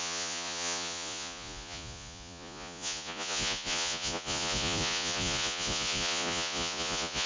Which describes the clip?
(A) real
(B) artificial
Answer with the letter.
B